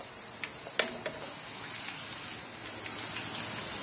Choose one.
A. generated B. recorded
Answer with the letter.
B